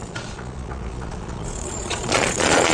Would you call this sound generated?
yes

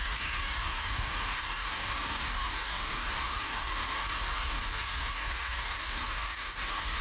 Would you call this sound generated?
yes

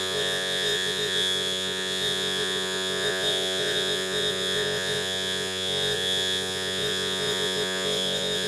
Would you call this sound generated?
yes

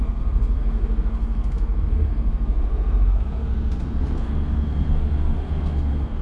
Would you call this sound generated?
yes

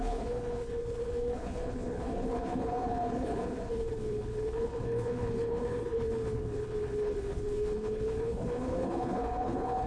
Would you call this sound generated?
yes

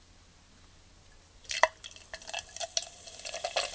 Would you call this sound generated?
no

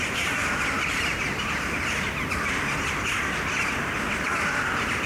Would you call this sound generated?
no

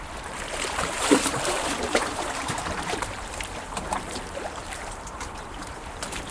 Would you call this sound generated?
yes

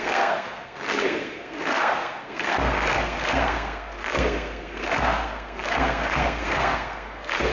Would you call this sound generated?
yes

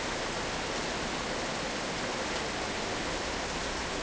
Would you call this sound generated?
no